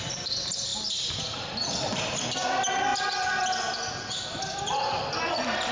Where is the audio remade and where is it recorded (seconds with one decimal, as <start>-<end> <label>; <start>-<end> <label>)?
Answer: 0.0-5.7 recorded